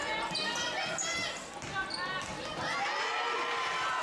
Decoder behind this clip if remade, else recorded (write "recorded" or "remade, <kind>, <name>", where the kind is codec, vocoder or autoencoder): recorded